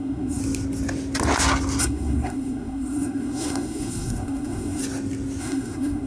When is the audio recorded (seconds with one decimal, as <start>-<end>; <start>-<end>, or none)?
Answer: 0.4-1.8; 4.8-5.4